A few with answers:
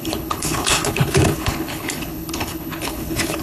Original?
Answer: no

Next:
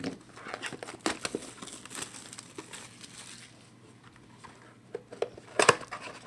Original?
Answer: yes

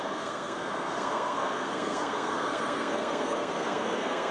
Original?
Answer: no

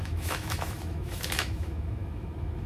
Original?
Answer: no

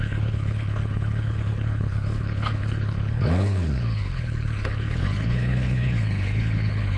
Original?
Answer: no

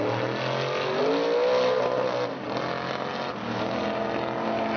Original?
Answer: yes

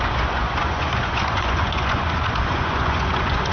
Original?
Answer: no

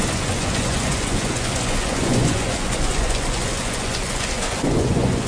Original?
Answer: no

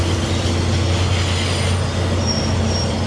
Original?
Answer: yes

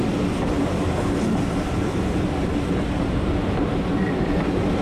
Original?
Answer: yes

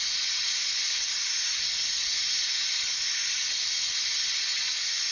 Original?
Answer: yes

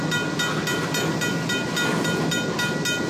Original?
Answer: yes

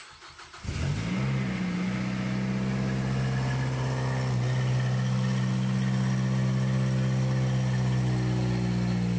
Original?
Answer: yes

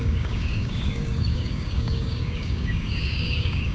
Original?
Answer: no